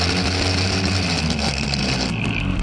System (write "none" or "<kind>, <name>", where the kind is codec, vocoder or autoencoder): none